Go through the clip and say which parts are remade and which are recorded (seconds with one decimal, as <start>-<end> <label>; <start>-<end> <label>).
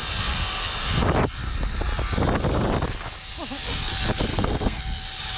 0.0-4.3 recorded; 4.3-4.8 remade; 4.8-5.4 recorded